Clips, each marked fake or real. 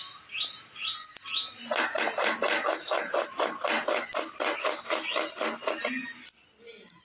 real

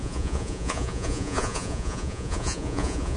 fake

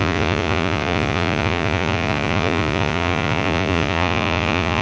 fake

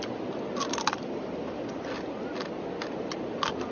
real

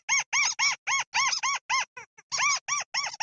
real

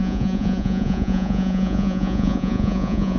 fake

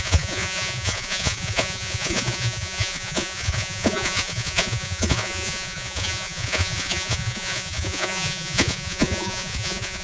fake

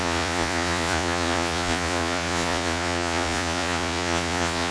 fake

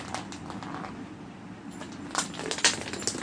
real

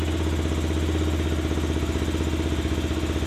real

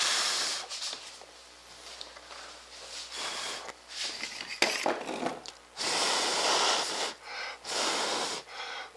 real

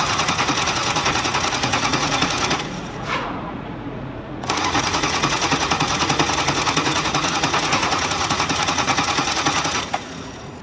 fake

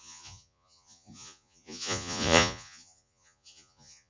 fake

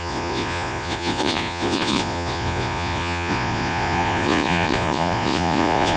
fake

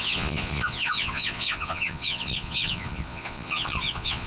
fake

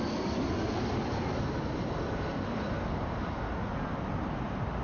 real